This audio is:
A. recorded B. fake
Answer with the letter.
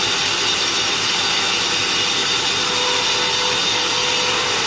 A